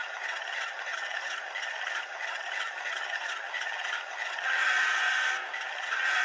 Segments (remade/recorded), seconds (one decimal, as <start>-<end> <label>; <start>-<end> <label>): 0.0-5.1 remade; 5.1-5.7 recorded; 5.7-6.2 remade